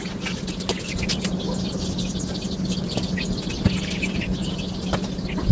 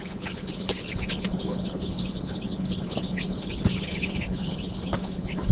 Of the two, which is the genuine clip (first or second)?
first